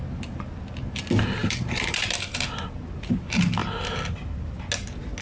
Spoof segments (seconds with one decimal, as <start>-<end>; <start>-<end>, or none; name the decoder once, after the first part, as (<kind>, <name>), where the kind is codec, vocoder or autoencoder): 1.4-3.2 (vocoder, BigVGAN v2); 3.6-4.5